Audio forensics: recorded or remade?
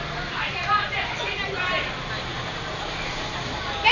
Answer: recorded